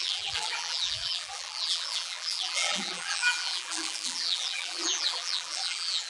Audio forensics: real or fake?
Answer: fake